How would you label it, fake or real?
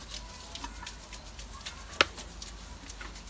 real